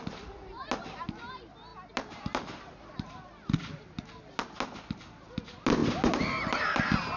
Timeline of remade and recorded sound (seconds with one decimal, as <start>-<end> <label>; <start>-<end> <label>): 0.0-7.2 recorded